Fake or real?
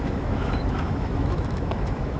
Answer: fake